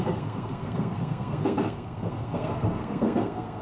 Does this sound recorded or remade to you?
remade